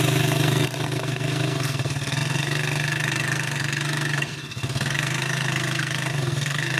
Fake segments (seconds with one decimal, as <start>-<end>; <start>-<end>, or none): 0.0-6.8